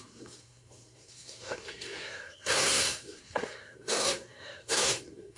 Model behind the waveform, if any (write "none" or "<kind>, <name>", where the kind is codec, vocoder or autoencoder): codec, SNAC